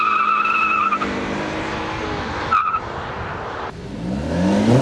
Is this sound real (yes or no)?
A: yes